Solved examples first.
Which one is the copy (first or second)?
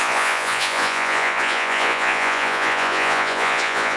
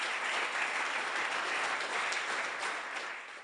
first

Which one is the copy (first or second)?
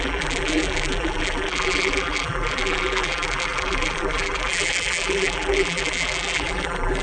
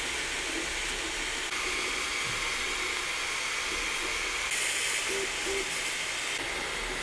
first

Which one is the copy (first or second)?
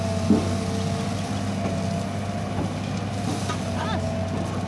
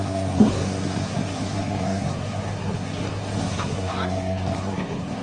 second